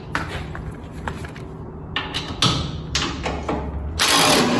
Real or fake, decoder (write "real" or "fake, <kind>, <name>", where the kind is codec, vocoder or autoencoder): real